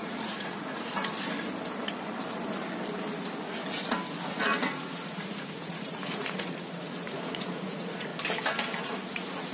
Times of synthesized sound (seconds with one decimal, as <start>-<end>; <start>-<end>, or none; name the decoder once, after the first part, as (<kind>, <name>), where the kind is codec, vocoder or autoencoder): 0.0-1.1 (vocoder, Vocos); 4.3-8.1; 8.8-9.5